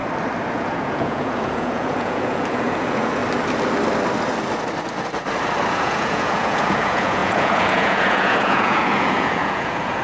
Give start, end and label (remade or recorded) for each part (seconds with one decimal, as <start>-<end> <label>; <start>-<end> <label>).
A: 0.0-0.5 recorded; 0.5-3.2 remade; 3.2-5.7 recorded; 5.7-10.0 remade